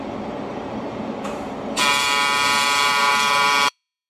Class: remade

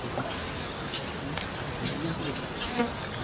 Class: recorded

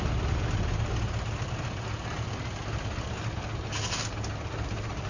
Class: recorded